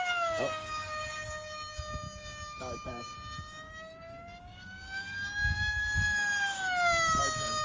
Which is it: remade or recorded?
remade